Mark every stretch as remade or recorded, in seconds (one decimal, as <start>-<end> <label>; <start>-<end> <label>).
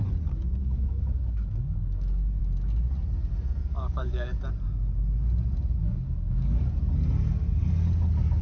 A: 0.0-0.6 recorded; 0.6-2.4 remade; 2.4-3.6 recorded; 3.6-4.4 remade; 4.4-5.8 recorded; 5.8-6.6 remade; 6.6-8.4 recorded